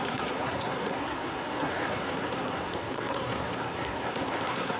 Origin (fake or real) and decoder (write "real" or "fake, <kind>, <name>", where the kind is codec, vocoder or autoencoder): fake, codec, SNAC